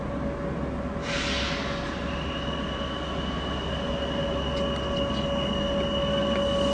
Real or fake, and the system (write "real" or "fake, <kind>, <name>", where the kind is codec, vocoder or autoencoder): real